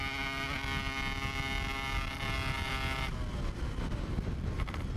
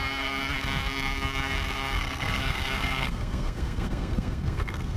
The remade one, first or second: second